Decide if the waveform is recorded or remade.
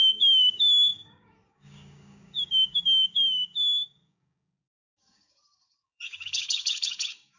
remade